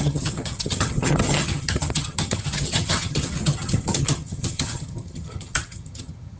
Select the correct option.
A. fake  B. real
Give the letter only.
A